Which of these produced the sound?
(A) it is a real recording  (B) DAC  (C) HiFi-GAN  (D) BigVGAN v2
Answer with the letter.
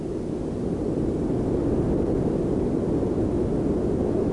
A